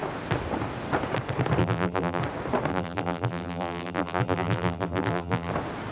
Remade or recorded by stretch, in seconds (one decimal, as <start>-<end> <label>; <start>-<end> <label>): 0.0-1.6 recorded; 1.6-2.2 remade; 2.2-2.7 recorded; 2.7-5.5 remade; 5.5-5.9 recorded